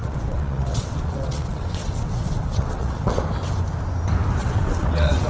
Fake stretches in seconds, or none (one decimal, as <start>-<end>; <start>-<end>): 0.0-3.2; 4.4-5.3